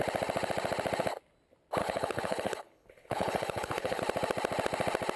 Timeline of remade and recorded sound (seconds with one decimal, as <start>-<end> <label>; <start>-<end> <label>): 0.0-1.8 recorded; 1.8-4.0 remade; 4.0-5.2 recorded